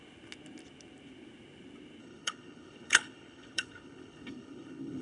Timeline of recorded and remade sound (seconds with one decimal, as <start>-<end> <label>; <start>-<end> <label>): 0.0-2.0 recorded; 2.0-5.0 remade

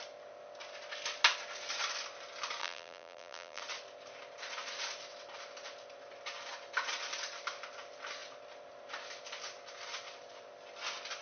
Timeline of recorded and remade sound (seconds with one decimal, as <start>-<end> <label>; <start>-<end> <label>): 0.0-2.6 recorded; 2.6-3.6 remade; 3.6-11.2 recorded

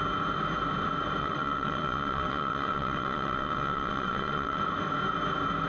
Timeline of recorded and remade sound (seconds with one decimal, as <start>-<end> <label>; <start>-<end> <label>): 0.0-1.2 recorded; 1.2-4.6 remade; 4.6-5.7 recorded

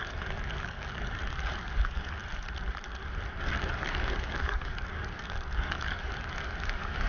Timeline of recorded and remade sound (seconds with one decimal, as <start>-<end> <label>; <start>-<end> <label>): 0.0-2.2 remade; 2.2-3.4 recorded; 3.4-7.1 remade